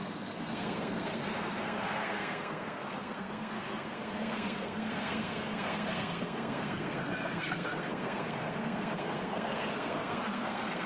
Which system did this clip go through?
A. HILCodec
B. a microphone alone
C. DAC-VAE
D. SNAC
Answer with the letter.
D